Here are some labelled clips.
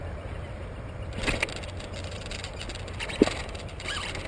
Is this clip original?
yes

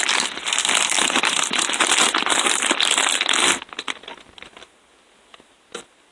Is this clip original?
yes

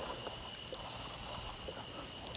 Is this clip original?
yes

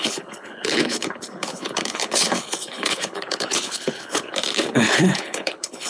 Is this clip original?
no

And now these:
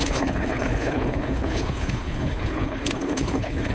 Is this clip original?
no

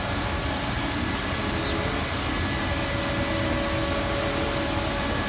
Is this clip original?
yes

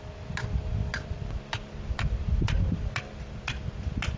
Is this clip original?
yes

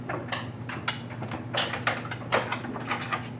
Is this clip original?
yes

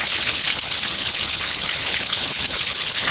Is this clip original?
no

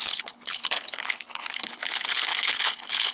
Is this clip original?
no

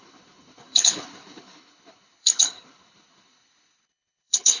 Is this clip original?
no